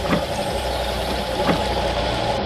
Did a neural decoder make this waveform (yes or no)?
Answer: yes